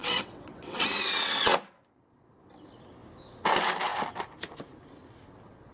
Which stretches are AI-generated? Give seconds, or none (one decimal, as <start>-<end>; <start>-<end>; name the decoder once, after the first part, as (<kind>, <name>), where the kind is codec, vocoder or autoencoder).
0.0-1.6 (vocoder, WaveNeXt)